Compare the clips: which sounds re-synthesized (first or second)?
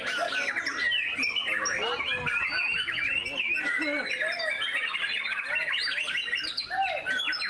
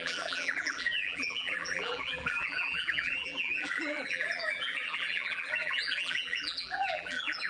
second